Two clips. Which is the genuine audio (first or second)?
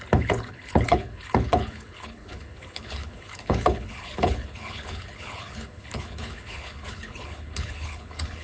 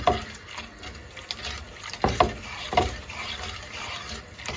second